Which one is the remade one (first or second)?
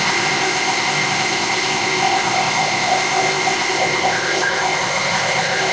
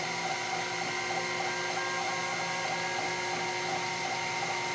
first